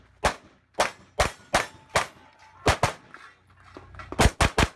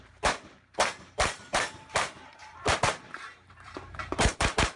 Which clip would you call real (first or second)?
first